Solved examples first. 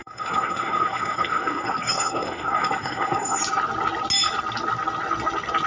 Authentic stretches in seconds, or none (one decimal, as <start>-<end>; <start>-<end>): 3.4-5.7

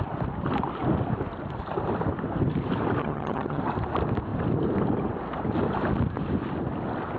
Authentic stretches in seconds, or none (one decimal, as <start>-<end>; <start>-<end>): 0.0-3.0; 3.6-7.2

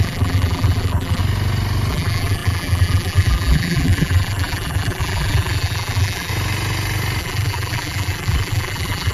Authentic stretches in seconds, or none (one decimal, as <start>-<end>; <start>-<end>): 1.2-1.9; 6.3-7.2

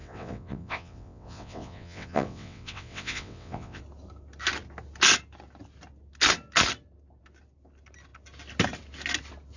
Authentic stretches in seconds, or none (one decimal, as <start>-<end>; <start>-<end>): 3.8-9.6

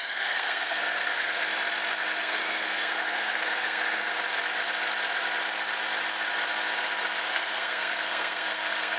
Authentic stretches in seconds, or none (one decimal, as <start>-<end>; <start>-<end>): 1.5-2.2; 4.1-7.2

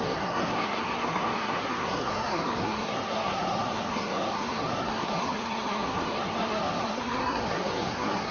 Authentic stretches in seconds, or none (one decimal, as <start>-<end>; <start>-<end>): none

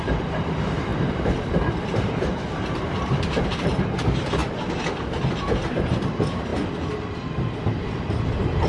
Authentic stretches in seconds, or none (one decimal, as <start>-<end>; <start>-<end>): 4.4-5.7; 6.5-8.7

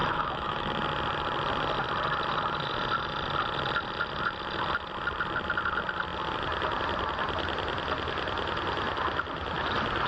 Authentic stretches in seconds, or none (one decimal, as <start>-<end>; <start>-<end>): 0.7-10.1